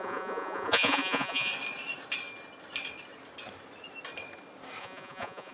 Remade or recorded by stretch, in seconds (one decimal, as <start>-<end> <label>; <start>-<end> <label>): 0.0-1.5 remade; 1.5-4.8 recorded; 4.8-5.5 remade